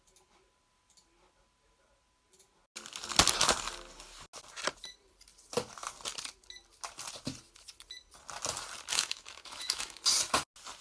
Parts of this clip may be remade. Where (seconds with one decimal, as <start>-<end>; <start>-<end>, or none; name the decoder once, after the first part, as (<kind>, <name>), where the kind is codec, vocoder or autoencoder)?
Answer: 8.9-10.0 (autoencoder, DAC-VAE)